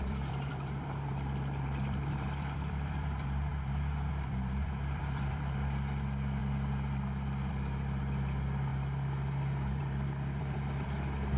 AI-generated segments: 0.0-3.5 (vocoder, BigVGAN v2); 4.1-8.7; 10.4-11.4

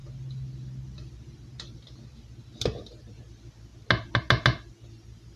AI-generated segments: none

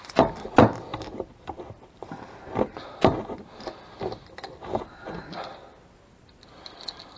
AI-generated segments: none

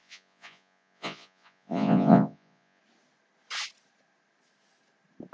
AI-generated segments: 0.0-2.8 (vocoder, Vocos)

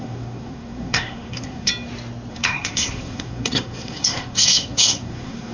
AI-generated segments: 0.0-1.7 (codec, SNAC); 2.3-5.5